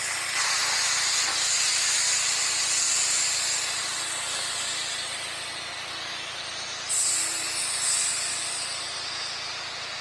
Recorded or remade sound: recorded